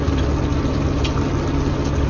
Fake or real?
real